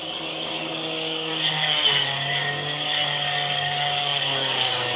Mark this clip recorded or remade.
remade